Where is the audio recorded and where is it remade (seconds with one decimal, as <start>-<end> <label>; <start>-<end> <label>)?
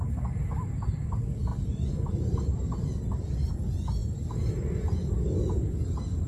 0.0-1.5 recorded; 1.5-3.5 remade; 3.5-6.3 recorded